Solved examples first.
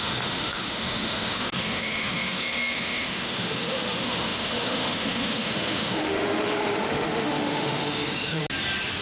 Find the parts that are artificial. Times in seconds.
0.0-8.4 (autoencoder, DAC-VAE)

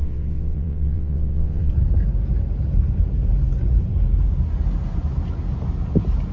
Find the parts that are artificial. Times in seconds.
0.0-1.7 (vocoder, WaveNeXt)

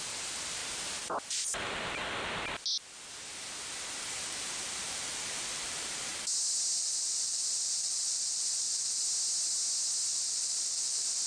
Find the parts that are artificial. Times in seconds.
0.0-0.6 (vocoder, BigVGAN v2); 1.3-2.0; 4.1-6.1; 6.8-9.0; 10.1-11.3

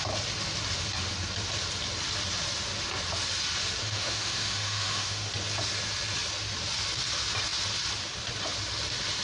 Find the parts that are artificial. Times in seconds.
3.8-5.3 (autoencoder, DAC-VAE)

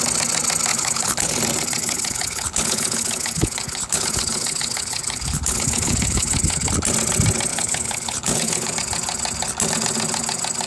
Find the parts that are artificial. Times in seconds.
0.7-1.4 (codec, HILCodec); 1.8-6.7; 7.5-8.7

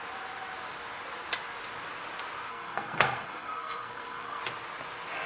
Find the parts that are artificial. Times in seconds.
2.5-4.4 (codec, SNAC)